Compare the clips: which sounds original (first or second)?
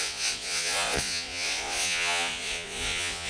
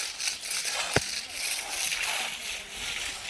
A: second